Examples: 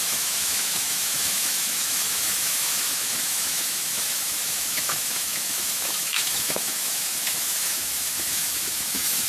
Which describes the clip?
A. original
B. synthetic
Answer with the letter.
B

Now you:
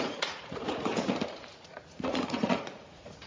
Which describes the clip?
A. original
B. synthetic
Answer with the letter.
B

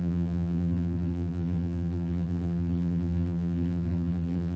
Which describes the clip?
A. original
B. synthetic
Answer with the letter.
B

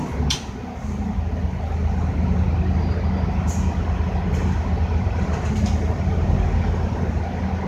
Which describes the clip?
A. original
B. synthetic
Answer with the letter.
A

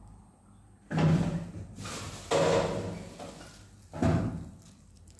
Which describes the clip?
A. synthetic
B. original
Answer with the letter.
B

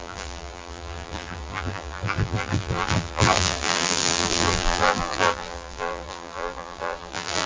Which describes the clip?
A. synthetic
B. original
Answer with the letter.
A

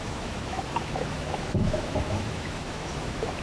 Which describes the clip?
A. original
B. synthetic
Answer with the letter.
B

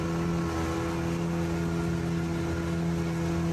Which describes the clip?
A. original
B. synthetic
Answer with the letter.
A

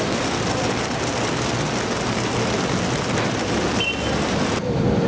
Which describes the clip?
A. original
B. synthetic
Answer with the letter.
A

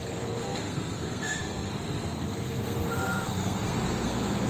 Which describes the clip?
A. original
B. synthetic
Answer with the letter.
B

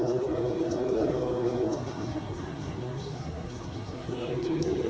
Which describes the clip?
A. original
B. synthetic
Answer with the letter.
B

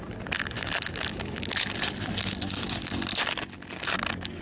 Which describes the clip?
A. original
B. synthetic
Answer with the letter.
A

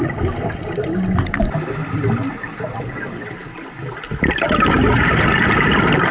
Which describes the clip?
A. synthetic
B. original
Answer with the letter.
B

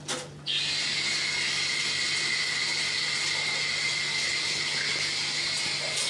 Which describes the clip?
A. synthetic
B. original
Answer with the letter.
B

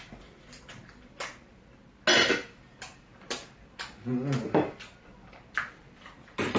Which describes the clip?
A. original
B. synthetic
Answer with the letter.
A